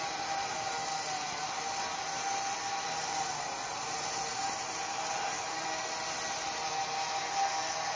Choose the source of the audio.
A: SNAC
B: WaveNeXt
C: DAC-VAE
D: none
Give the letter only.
D